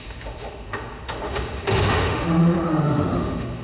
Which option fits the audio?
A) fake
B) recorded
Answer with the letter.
A